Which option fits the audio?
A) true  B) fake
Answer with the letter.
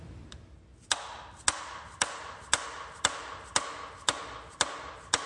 A